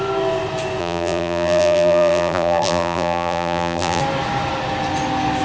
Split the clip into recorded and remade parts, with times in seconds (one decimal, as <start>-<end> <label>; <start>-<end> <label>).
0.0-0.8 recorded; 0.8-4.0 remade; 4.0-5.4 recorded